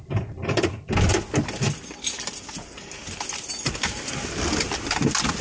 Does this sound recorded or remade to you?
recorded